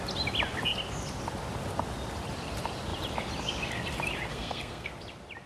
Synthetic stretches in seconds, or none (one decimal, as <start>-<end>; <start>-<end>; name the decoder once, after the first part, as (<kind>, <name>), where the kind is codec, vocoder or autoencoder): 4.3-4.9 (codec, SNAC)